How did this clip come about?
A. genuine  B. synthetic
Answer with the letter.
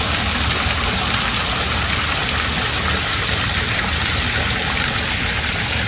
A